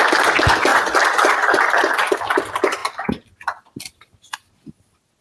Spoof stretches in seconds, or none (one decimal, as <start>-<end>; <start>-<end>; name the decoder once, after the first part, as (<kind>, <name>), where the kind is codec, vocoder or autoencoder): none